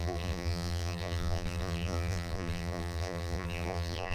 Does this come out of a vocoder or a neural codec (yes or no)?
yes